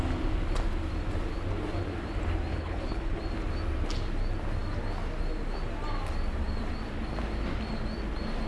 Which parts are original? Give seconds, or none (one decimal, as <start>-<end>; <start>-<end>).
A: 0.0-2.5; 3.2-8.5